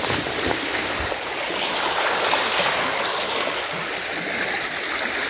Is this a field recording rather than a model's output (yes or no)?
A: yes